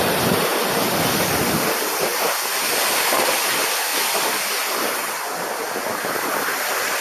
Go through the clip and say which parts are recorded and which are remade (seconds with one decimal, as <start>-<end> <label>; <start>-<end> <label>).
0.0-7.0 recorded